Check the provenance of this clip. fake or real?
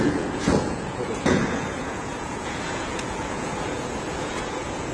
fake